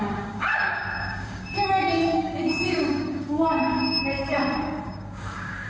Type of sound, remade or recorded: remade